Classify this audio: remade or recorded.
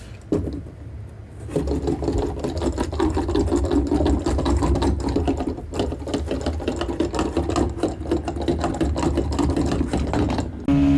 recorded